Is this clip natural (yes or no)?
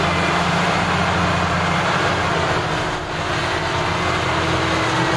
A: yes